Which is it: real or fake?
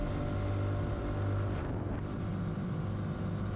real